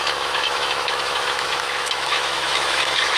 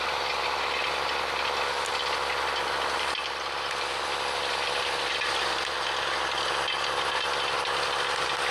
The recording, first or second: second